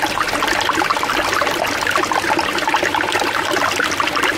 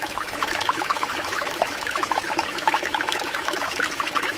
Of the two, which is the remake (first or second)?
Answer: second